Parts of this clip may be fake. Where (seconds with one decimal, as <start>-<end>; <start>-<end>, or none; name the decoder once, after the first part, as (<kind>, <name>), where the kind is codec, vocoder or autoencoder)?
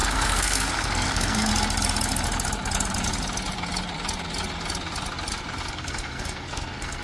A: 0.0-1.5 (codec, SNAC); 5.7-7.0